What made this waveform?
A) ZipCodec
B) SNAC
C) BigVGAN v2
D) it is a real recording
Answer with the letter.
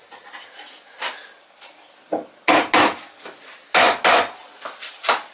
D